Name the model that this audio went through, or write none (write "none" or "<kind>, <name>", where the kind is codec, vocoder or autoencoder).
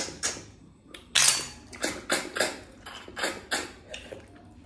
none